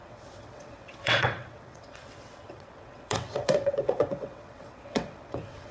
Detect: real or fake fake